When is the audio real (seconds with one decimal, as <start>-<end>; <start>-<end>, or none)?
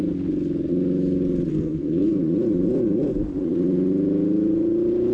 0.0-1.5; 2.2-5.1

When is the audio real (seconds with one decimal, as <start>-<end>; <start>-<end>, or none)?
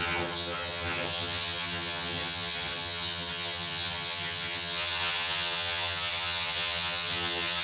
none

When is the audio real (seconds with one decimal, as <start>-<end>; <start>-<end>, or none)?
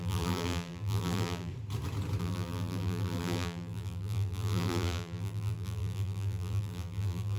1.5-2.2